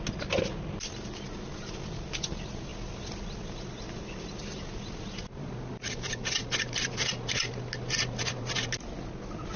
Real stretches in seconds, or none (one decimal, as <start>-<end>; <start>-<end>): 0.0-9.6